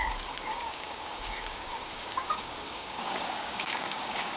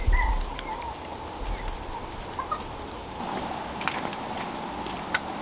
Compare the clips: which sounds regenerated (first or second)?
first